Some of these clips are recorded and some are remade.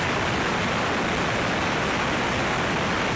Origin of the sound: recorded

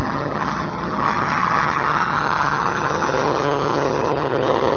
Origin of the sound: remade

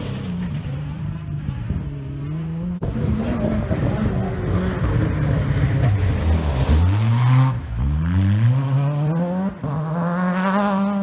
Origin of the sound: recorded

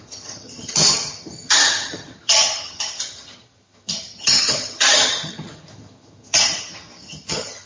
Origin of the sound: remade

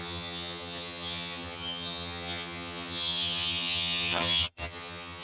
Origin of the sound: remade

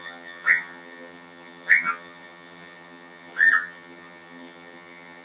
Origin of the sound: remade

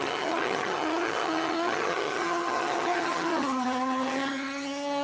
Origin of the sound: remade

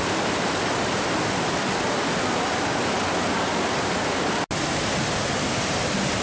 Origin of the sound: recorded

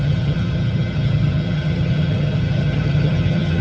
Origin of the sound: remade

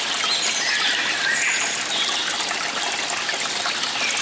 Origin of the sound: recorded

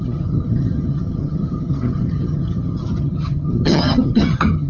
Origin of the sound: remade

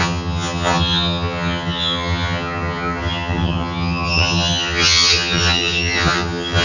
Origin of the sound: remade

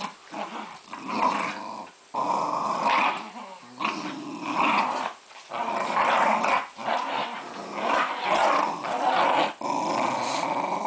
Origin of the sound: recorded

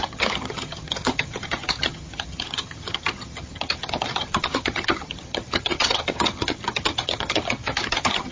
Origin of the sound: remade